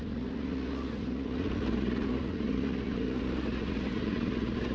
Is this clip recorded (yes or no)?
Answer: no